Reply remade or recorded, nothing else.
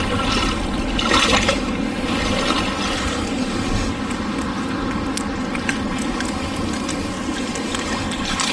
recorded